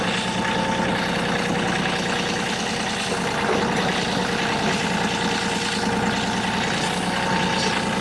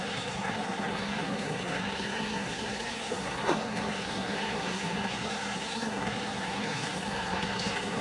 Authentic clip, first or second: first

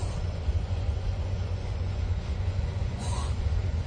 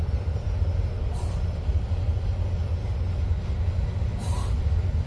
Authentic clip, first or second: second